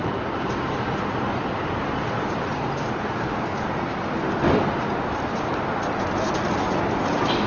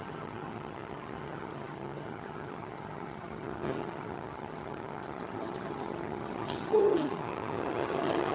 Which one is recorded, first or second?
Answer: first